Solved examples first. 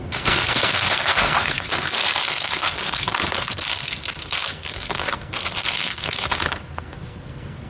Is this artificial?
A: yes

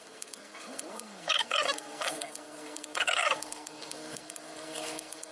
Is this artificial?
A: yes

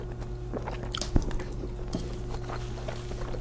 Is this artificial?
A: no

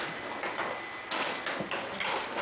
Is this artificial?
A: no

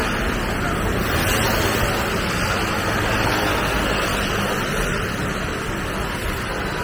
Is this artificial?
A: no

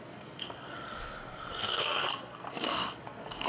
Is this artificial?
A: yes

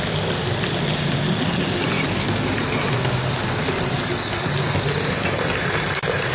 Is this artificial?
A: no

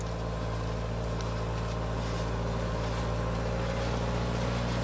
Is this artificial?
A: no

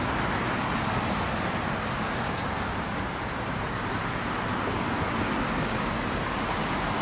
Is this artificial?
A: no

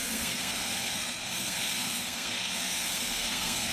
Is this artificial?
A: yes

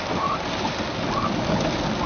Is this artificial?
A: no